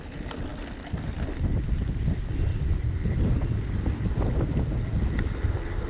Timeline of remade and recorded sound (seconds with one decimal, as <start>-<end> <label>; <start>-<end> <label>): 0.0-2.5 recorded; 2.5-4.5 remade; 4.5-5.9 recorded

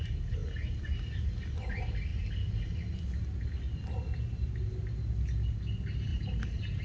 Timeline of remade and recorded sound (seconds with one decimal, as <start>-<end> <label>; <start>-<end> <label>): 0.0-6.1 recorded; 6.1-6.8 remade

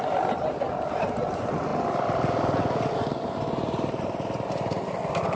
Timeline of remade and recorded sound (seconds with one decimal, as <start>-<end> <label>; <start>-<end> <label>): 0.0-5.4 recorded

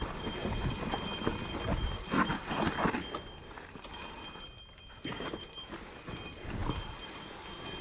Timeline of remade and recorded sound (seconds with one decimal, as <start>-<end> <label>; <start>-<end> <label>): 0.0-0.4 remade; 0.4-1.8 recorded; 1.8-2.3 remade; 2.3-3.9 recorded; 3.9-7.8 remade

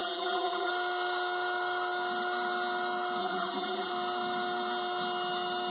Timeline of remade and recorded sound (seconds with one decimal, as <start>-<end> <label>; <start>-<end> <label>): 0.0-0.7 remade; 0.7-3.2 recorded; 3.2-3.9 remade; 3.9-5.7 recorded